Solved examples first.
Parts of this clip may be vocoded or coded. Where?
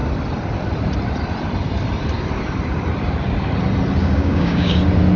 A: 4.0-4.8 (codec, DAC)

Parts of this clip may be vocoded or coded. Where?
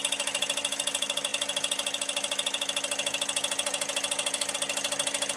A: none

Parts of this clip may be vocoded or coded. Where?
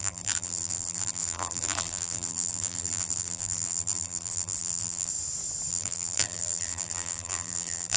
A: 0.0-5.1 (vocoder, BigVGAN v2); 5.7-8.0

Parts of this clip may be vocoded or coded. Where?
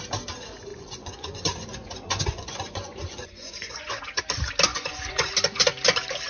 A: 0.7-4.2 (vocoder, Vocos); 4.7-5.3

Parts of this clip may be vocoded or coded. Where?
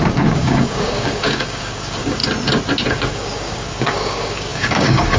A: 0.0-2.2 (codec, DAC); 2.9-5.2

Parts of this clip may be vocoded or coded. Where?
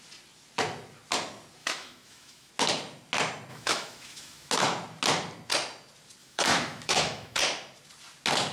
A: 1.6-2.5 (autoencoder, DAC-VAE); 3.5-4.5; 6.2-7.4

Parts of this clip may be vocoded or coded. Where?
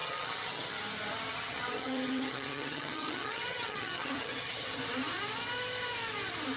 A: 0.0-0.8 (vocoder, HiFi-GAN); 1.3-4.8